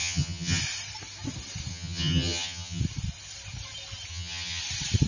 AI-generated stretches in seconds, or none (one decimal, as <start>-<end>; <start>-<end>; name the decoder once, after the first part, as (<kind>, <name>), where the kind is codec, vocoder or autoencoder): 0.0-0.6 (vocoder, HiFi-GAN); 1.7-2.8; 4.1-4.6